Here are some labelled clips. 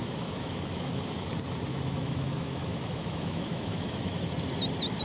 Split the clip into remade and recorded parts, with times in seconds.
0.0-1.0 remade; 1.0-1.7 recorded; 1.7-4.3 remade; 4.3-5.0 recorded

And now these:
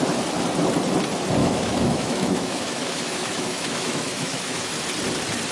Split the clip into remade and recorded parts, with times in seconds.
0.0-1.4 recorded; 1.4-4.7 remade; 4.7-5.5 recorded

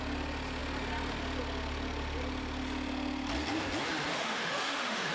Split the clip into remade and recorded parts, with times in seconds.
0.0-4.1 recorded; 4.1-5.1 remade

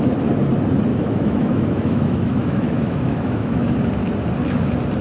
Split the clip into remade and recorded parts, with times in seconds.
0.0-0.9 recorded; 0.9-3.7 remade; 3.7-5.0 recorded

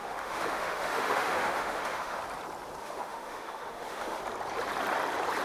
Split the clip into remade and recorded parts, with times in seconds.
0.0-2.2 remade; 2.2-2.8 recorded; 2.8-4.2 remade; 4.2-5.4 recorded

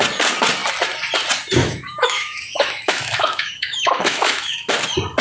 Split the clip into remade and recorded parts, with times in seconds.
0.0-1.6 recorded; 1.6-4.7 remade; 4.7-5.2 recorded

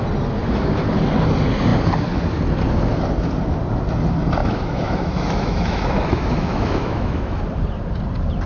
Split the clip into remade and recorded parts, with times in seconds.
0.0-4.4 recorded; 4.4-7.4 remade; 7.4-8.5 recorded

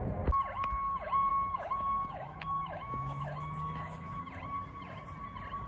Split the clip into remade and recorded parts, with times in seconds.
0.0-1.3 recorded; 1.3-4.2 remade; 4.2-5.7 recorded